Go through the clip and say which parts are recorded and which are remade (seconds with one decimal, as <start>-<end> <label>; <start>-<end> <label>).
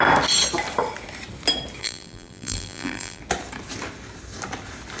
0.0-1.8 recorded; 1.8-3.2 remade; 3.2-5.0 recorded